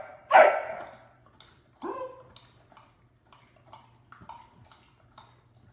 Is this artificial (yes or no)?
no